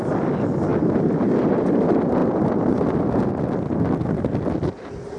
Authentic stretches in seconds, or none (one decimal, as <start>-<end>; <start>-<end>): 0.0-5.2